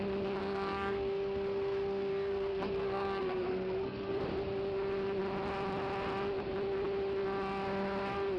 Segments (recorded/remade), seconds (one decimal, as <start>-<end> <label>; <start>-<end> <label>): 0.0-0.4 recorded; 0.4-4.2 remade; 4.2-8.4 recorded